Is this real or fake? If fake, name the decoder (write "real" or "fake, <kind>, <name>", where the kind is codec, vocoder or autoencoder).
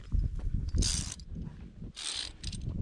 real